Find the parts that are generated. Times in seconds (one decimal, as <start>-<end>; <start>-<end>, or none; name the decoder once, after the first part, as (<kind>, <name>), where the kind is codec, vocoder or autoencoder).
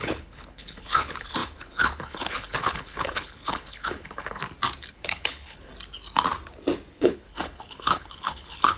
0.0-4.4 (codec, HILCodec); 4.9-5.7; 6.9-8.8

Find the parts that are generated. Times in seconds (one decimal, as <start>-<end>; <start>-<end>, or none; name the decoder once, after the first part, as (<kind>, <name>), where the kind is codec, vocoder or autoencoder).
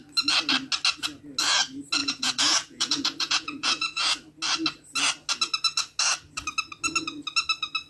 2.0-4.0 (vocoder, Vocos)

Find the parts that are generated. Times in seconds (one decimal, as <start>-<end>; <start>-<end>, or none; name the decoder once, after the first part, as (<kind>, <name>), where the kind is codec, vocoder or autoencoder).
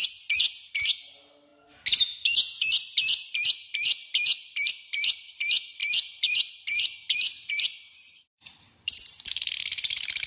5.8-7.5 (vocoder, BigVGAN v2); 8.5-9.5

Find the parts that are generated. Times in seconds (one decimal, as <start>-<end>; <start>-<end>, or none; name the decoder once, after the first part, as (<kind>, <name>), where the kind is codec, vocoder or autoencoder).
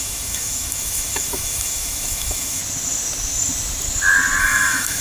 0.0-2.6 (autoencoder, DAC-VAE); 4.4-5.0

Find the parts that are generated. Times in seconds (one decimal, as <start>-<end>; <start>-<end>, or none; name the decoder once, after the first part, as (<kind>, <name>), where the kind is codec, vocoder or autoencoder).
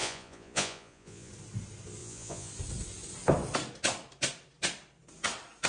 0.0-1.3 (vocoder, Vocos); 2.0-2.5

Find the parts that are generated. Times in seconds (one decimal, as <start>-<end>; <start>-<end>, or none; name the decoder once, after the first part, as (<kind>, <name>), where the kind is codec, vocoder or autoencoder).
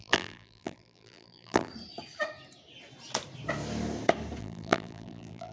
0.0-1.7 (vocoder, BigVGAN v2); 4.4-5.5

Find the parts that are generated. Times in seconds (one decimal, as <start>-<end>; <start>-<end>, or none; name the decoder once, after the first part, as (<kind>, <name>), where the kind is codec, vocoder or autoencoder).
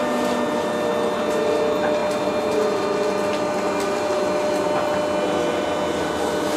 none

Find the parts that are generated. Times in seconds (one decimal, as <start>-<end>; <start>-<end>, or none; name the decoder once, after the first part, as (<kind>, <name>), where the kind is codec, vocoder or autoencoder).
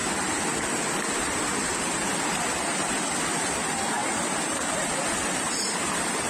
none